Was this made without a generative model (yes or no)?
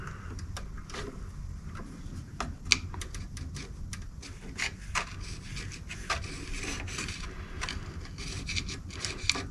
yes